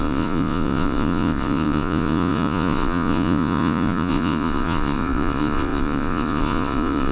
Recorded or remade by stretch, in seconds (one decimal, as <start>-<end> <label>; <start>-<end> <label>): 0.0-7.1 remade